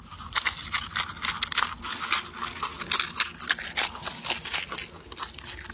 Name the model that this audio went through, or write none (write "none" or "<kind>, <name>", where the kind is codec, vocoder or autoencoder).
none